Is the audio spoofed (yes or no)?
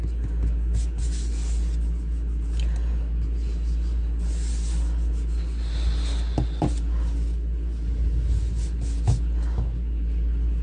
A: no